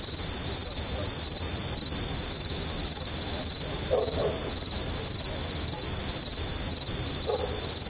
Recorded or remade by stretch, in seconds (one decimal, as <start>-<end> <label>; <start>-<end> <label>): 0.0-7.9 recorded